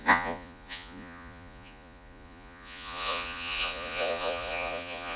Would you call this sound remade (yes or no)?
yes